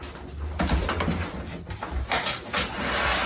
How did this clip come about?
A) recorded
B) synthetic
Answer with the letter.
A